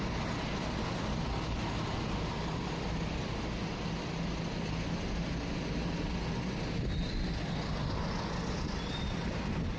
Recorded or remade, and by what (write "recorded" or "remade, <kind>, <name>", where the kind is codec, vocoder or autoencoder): recorded